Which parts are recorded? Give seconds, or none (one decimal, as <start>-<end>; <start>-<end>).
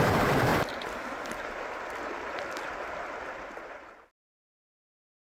0.0-5.4